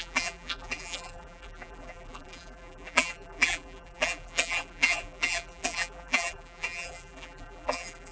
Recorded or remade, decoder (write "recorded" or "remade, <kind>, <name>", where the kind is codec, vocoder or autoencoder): remade, vocoder, BigVGAN v2